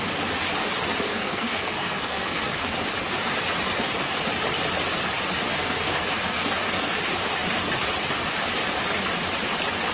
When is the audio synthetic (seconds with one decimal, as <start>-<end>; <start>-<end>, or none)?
1.1-2.5; 5.5-6.9